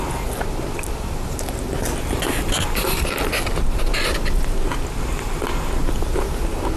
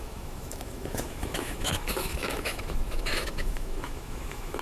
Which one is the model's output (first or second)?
second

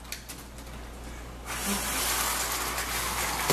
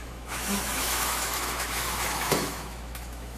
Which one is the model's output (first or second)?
second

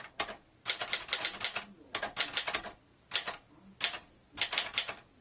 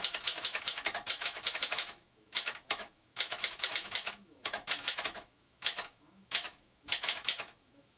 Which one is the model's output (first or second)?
second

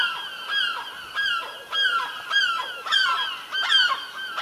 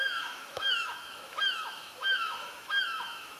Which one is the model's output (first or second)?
second